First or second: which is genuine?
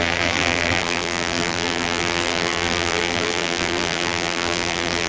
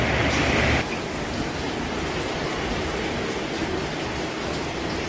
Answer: second